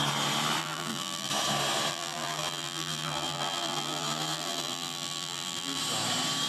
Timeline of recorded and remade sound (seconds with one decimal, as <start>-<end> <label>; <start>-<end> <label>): 0.0-0.6 recorded; 0.6-1.3 remade; 1.3-1.9 recorded; 1.9-5.8 remade; 5.8-6.5 recorded